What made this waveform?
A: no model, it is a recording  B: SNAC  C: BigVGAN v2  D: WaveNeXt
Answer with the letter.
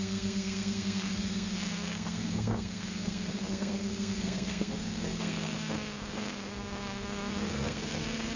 B